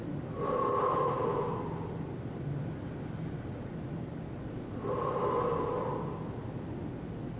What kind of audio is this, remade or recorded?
recorded